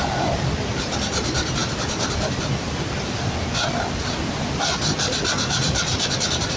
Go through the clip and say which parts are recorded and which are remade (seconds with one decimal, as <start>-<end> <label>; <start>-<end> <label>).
0.0-6.6 recorded